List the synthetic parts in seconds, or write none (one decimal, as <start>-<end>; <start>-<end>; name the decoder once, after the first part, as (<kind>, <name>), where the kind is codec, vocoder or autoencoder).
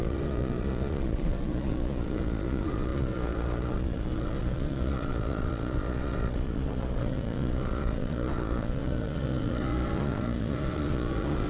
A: 0.0-11.5 (vocoder, Vocos)